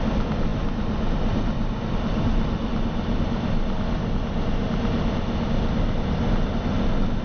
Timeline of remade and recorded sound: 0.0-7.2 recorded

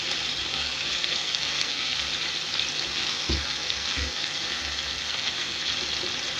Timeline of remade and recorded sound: 0.0-0.5 recorded; 0.5-2.1 remade; 2.1-2.9 recorded; 2.9-5.7 remade; 5.7-6.4 recorded

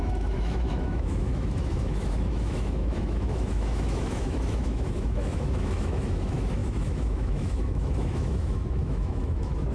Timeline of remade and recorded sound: 0.0-9.7 remade

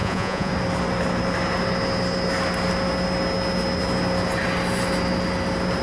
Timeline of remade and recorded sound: 0.0-0.5 remade; 0.5-5.8 recorded

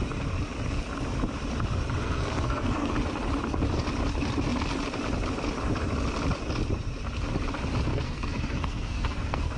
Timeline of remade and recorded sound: 0.0-2.0 recorded; 2.0-2.9 remade; 2.9-7.9 recorded; 7.9-9.6 remade

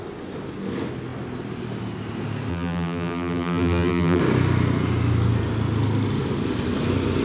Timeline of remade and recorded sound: 0.0-2.5 recorded; 2.5-4.2 remade; 4.2-7.2 recorded